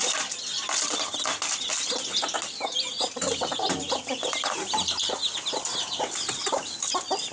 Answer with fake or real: real